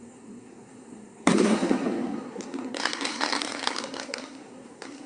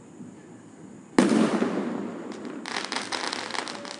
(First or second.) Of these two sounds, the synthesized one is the first